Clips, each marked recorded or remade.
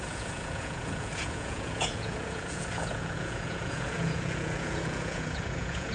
remade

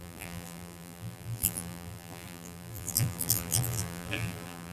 remade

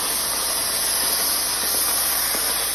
recorded